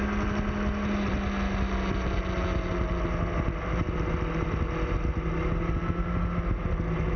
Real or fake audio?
real